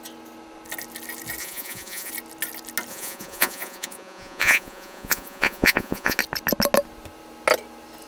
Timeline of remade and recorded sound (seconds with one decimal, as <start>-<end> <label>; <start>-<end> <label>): 0.0-1.4 recorded; 1.4-2.1 remade; 2.1-2.9 recorded; 2.9-6.2 remade; 6.2-8.1 recorded

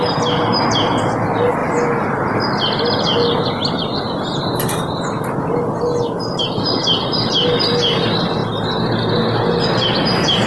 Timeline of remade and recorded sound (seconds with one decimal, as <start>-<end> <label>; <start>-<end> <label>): 0.0-10.5 recorded

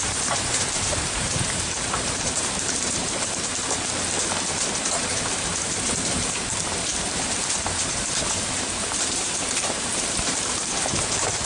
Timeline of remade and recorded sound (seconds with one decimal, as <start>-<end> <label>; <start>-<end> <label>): 0.0-3.5 remade; 3.5-5.1 recorded; 5.1-11.5 remade

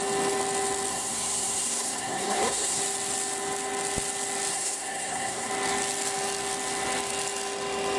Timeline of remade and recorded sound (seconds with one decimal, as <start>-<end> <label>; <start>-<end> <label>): 0.0-0.9 recorded; 0.9-2.8 remade; 2.8-4.5 recorded; 4.5-5.5 remade; 5.5-8.0 recorded

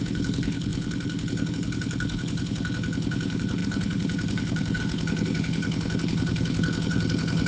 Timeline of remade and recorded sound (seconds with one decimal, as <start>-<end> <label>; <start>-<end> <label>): 0.0-7.5 remade